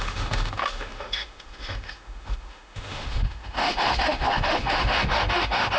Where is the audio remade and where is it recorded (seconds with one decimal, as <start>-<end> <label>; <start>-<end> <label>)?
0.0-5.8 remade